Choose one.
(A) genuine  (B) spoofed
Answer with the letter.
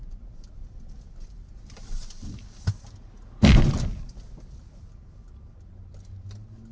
B